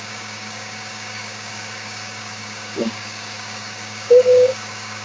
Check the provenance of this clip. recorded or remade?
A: remade